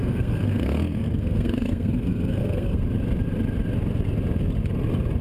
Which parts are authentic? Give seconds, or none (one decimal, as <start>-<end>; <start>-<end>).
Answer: 2.8-5.2